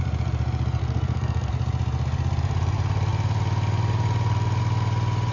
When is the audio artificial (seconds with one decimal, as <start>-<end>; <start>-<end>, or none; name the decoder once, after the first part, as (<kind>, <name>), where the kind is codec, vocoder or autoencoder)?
0.8-1.5 (codec, SNAC)